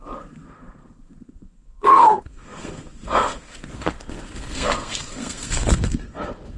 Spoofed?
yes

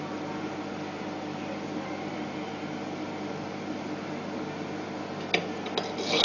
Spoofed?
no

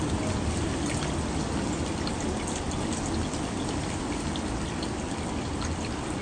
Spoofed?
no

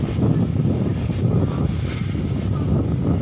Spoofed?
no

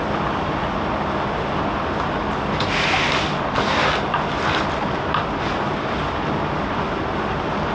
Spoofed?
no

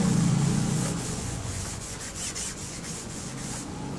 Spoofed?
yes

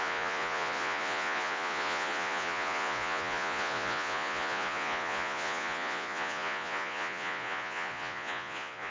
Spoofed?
yes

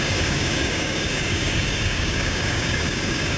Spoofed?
yes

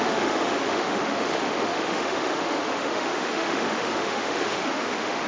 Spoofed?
yes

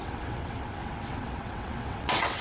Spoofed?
yes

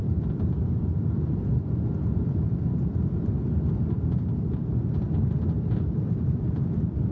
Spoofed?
yes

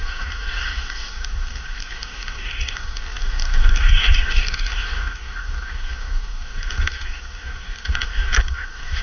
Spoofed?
yes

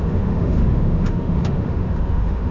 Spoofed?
yes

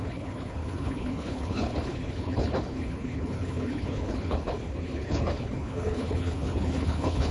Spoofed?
yes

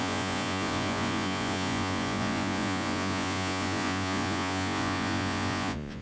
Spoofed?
yes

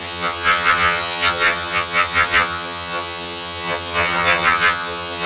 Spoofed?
yes